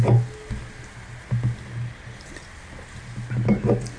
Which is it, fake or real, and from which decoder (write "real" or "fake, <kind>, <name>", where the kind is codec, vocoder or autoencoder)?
real